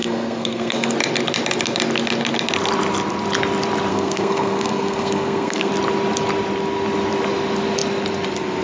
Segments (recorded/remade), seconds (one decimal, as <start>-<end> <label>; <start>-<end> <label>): 0.0-0.9 remade; 0.9-3.9 recorded; 3.9-5.7 remade; 5.7-8.6 recorded